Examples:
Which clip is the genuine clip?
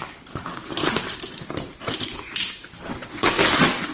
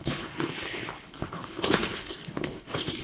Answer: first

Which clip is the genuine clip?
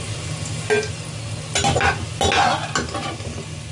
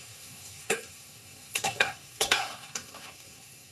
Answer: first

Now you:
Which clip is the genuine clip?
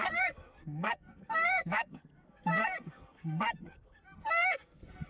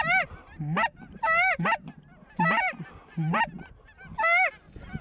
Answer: second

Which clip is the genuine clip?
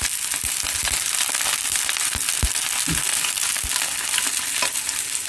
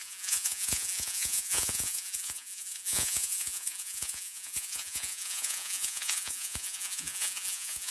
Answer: first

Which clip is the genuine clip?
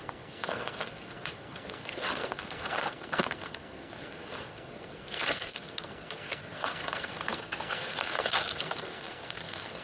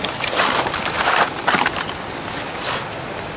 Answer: second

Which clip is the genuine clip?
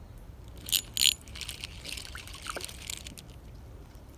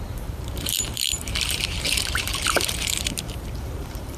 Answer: first